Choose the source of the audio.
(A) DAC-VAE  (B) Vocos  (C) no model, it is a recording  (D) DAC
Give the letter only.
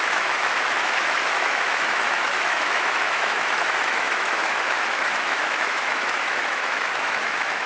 A